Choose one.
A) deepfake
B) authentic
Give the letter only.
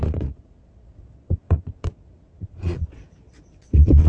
A